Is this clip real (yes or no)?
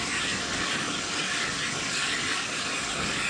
no